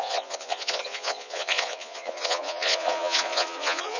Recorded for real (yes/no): no